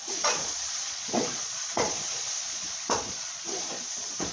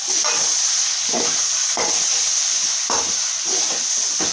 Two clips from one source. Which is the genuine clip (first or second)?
second